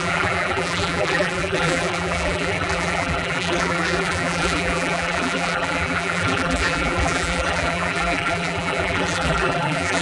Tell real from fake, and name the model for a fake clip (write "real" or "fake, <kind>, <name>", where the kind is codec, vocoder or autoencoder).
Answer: fake, vocoder, BigVGAN v2